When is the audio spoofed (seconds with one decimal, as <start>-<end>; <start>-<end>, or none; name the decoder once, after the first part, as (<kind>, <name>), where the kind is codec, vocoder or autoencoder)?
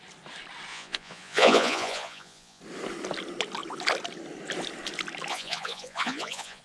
0.7-2.6 (vocoder, Vocos); 5.3-6.6